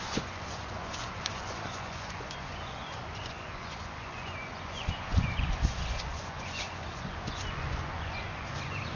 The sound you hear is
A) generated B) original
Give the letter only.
A